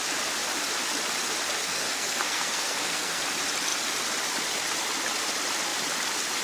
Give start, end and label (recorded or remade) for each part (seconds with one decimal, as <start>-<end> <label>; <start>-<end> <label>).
0.0-1.6 recorded; 1.6-3.2 remade; 3.2-6.4 recorded

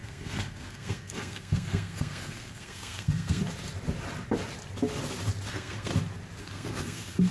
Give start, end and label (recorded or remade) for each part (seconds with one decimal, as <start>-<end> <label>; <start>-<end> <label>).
0.0-3.4 remade; 3.4-5.5 recorded; 5.5-5.9 remade; 5.9-6.4 recorded; 6.4-7.3 remade

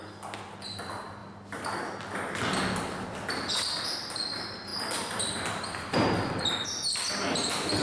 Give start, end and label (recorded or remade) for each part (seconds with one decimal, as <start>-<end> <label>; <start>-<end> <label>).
0.0-7.8 recorded

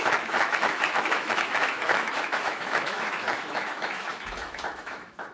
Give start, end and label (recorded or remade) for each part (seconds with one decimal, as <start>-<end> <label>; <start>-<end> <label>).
0.0-5.3 remade

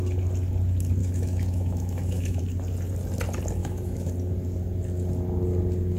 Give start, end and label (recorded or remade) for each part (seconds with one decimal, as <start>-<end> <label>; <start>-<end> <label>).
0.0-1.0 recorded; 1.0-2.4 remade; 2.4-3.6 recorded; 3.6-4.1 remade; 4.1-6.0 recorded